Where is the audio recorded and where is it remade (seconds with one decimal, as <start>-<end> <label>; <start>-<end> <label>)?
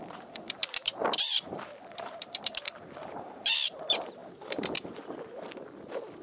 0.0-6.2 remade